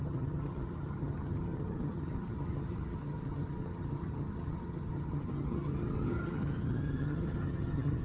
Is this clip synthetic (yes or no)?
yes